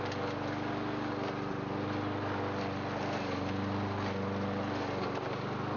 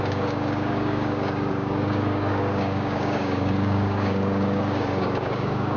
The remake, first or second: second